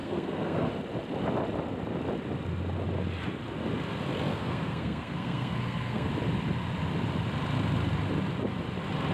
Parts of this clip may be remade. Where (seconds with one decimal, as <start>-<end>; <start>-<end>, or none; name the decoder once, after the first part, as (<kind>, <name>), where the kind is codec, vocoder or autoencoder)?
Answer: 0.0-0.7 (codec, SNAC); 4.3-6.1